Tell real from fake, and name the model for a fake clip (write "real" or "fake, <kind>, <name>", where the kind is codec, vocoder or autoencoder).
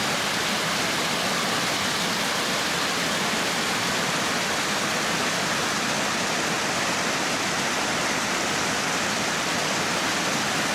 real